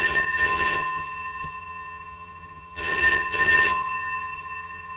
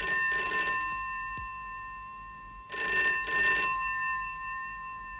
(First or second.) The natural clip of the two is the second